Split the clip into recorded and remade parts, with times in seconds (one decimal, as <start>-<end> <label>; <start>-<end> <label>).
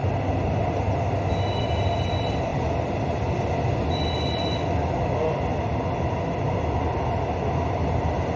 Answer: 0.0-8.4 recorded